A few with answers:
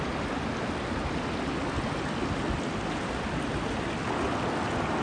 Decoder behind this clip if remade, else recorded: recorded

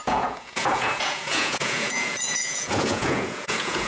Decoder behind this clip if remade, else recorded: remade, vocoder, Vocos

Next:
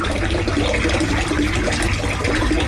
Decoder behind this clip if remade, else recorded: recorded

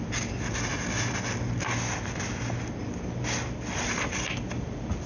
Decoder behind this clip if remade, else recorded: recorded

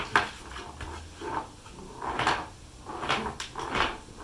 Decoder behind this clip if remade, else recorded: recorded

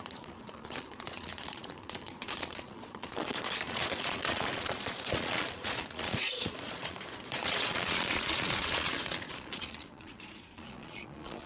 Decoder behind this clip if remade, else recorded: remade, vocoder, Vocos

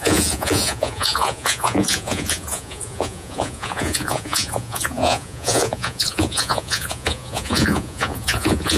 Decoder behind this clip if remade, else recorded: remade, vocoder, Vocos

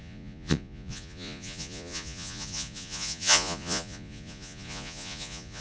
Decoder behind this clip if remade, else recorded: remade, vocoder, Vocos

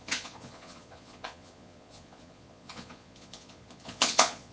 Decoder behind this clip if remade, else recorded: remade, vocoder, Vocos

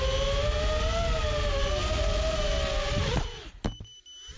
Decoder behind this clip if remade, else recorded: recorded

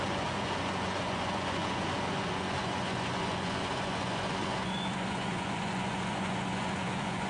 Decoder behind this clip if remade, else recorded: remade, vocoder, Vocos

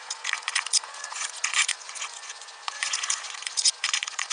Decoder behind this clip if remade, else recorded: remade, vocoder, Vocos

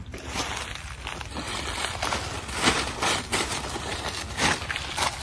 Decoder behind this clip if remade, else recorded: recorded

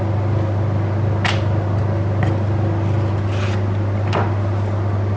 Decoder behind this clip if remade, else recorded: recorded